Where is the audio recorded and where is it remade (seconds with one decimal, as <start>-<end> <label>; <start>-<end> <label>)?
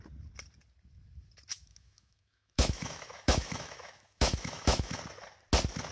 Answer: 0.0-1.5 recorded; 1.5-5.0 remade; 5.0-5.9 recorded